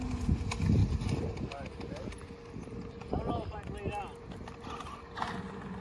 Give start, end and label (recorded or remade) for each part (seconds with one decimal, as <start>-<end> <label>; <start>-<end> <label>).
0.0-5.8 recorded